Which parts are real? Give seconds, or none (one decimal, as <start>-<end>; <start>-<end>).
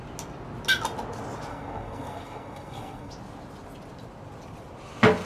0.0-1.5; 3.1-5.3